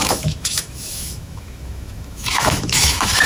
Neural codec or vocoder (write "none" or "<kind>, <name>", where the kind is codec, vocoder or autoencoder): autoencoder, DAC-VAE